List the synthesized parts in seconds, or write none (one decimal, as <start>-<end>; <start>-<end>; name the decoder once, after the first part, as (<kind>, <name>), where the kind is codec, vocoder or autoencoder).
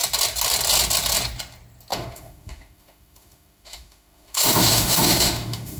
1.9-5.8 (autoencoder, DAC-VAE)